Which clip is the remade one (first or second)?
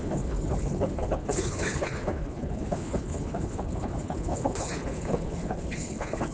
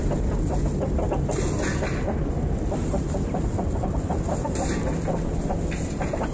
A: first